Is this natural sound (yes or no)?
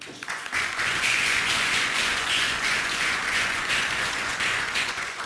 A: no